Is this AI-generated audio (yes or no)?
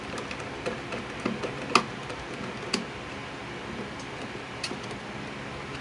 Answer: no